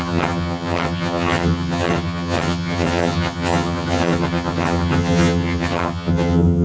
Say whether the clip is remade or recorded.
remade